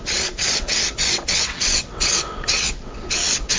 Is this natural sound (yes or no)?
no